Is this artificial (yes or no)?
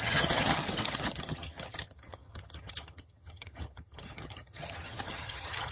yes